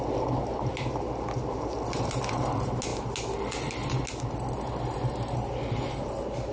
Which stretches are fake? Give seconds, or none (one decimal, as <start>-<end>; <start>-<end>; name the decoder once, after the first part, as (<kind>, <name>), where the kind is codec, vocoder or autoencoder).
none